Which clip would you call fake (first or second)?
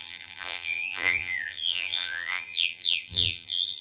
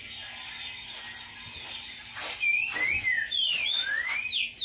first